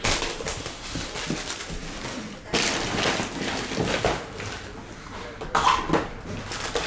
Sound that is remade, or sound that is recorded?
recorded